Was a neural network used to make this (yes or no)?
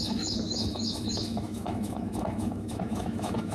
yes